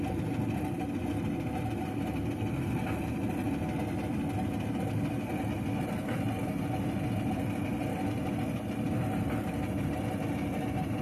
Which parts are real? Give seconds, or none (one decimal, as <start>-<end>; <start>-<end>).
0.0-11.0